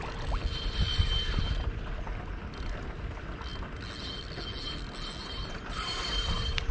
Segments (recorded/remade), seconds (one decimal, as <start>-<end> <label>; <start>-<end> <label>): 0.0-5.2 recorded; 5.2-6.7 remade